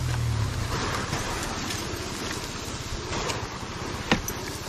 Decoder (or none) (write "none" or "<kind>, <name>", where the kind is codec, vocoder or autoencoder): none